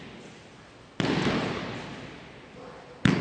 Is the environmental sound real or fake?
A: real